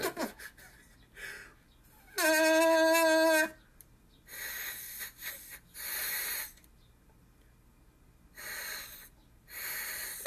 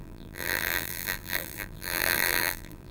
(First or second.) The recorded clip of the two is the first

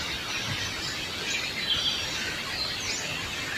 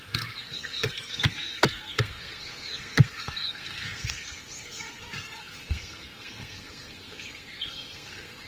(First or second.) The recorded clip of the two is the first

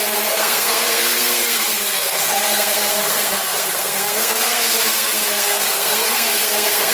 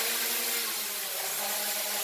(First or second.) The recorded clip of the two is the second